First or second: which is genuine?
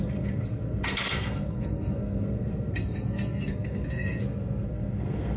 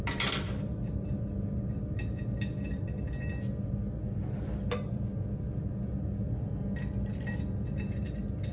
second